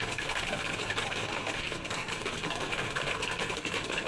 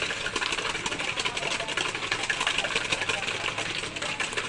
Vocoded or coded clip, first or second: first